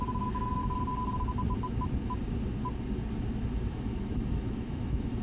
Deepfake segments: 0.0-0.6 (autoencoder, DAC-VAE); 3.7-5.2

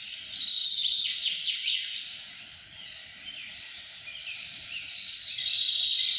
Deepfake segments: 0.6-3.8 (vocoder, BigVGAN v2); 4.2-5.7

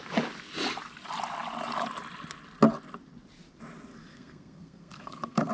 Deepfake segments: 4.1-5.5 (codec, SNAC)

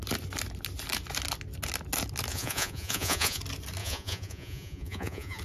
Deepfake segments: 2.3-3.4 (vocoder, Vocos); 3.8-5.4

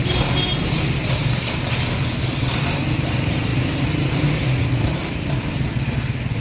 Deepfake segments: 1.0-1.8 (vocoder, BigVGAN v2); 3.5-5.5